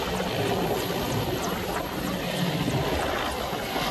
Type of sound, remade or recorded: recorded